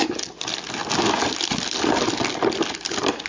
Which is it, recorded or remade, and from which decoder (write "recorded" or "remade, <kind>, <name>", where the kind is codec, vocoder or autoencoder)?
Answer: recorded